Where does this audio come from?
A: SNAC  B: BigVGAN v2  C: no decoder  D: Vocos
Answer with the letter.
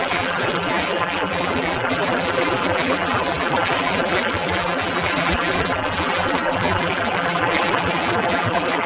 B